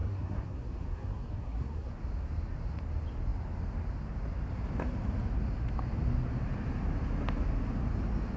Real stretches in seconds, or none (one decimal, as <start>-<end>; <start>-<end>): 1.9-8.4